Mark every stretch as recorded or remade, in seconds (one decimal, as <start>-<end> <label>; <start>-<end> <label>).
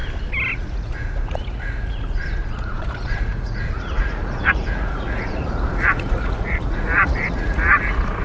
0.0-0.5 recorded; 0.5-8.2 remade